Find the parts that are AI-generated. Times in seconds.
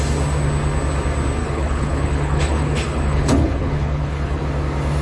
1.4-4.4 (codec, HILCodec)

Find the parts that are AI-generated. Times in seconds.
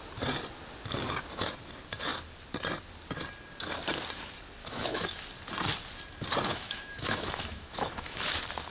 4.6-5.2 (autoencoder, DAC-VAE); 6.5-8.2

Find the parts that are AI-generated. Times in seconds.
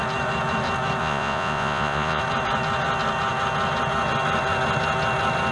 1.0-2.2 (vocoder, Vocos)